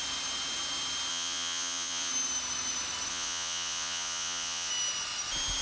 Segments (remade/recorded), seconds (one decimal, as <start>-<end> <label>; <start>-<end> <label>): 0.0-1.1 recorded; 1.1-2.1 remade; 2.1-3.1 recorded; 3.1-4.7 remade; 4.7-5.6 recorded